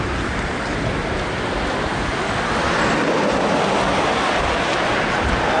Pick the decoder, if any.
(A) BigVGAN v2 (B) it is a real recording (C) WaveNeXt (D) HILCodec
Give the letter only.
B